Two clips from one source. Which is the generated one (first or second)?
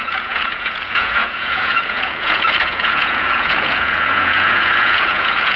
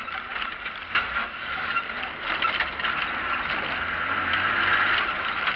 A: first